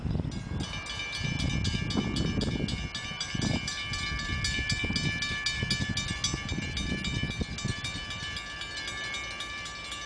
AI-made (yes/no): no